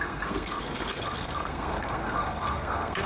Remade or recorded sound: remade